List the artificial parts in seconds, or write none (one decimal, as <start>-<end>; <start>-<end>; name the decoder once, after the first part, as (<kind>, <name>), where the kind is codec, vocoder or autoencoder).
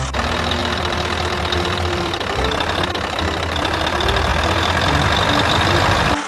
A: 0.6-3.8 (vocoder, BigVGAN v2)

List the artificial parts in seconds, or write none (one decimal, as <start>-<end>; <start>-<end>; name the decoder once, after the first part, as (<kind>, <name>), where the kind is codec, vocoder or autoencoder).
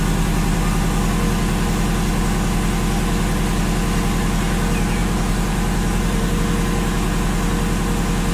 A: 5.0-6.4 (vocoder, BigVGAN v2)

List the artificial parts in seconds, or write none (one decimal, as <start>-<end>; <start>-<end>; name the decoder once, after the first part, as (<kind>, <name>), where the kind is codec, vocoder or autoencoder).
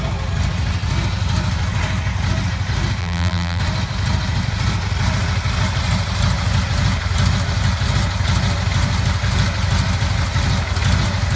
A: 3.0-3.6 (vocoder, BigVGAN v2)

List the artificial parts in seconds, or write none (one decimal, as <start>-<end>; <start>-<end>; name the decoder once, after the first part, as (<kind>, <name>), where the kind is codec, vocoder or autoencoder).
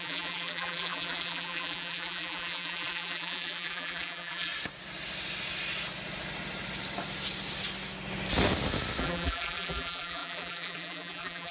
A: 0.0-4.5 (vocoder, BigVGAN v2); 9.0-11.5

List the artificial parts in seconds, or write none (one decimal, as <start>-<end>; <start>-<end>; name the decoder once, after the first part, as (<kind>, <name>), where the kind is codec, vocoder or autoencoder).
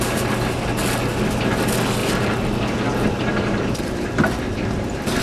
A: 2.0-5.2 (vocoder, BigVGAN v2)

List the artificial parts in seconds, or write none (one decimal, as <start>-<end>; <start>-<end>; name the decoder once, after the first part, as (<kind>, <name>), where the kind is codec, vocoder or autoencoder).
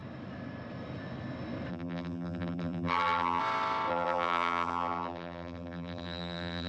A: 1.7-3.4 (vocoder, BigVGAN v2); 3.9-6.7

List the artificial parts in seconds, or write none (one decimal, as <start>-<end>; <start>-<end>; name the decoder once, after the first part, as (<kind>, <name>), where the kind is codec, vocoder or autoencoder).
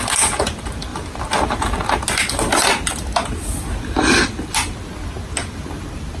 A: none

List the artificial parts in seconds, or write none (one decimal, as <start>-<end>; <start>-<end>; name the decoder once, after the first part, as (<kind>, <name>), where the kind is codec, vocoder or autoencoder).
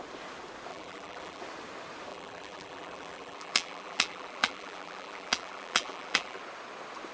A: 0.7-1.4 (vocoder, BigVGAN v2); 2.1-6.4